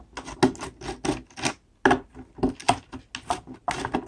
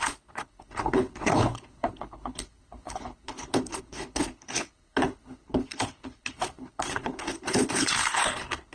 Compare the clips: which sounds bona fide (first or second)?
first